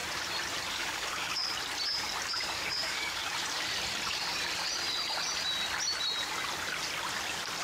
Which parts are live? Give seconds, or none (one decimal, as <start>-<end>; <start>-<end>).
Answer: 0.0-0.7; 1.4-2.5; 3.2-7.6